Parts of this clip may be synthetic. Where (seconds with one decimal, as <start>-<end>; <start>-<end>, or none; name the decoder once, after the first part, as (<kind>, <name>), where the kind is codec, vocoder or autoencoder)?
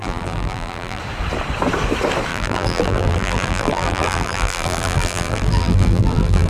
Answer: 0.0-1.0 (vocoder, BigVGAN v2); 2.3-6.5